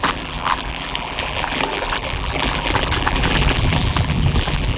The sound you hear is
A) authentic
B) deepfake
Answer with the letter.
B